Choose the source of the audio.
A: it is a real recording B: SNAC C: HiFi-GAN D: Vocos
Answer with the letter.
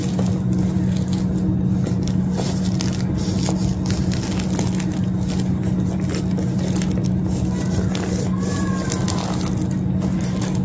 A